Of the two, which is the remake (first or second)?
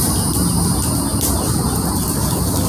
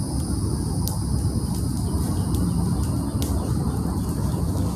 second